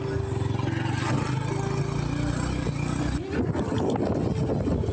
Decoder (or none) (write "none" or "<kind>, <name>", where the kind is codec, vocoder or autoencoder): none